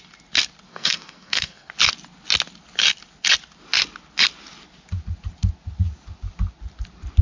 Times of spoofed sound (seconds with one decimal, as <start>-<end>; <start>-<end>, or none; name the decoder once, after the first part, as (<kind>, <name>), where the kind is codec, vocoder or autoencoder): 0.7-1.7 (codec, SNAC)